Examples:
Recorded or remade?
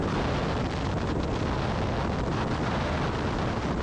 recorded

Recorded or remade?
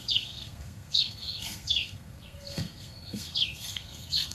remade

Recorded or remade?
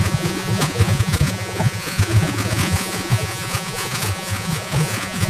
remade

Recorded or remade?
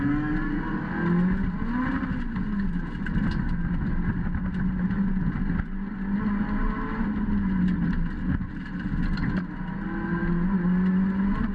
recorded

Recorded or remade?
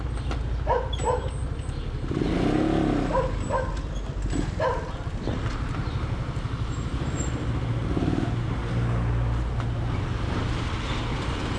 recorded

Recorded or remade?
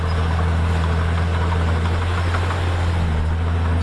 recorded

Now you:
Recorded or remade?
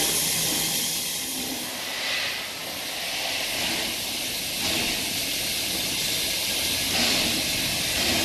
recorded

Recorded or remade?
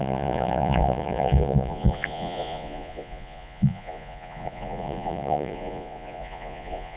remade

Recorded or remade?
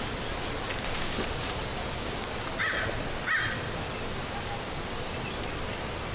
recorded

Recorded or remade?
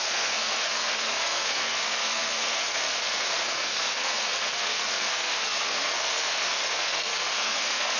remade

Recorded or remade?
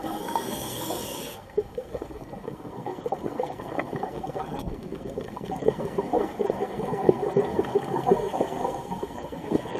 remade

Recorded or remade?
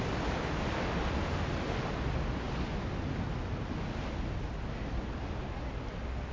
recorded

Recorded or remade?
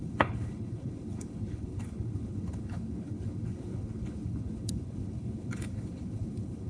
remade